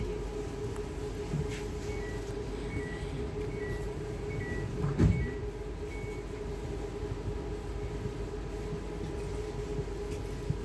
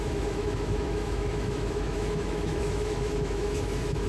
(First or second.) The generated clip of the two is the second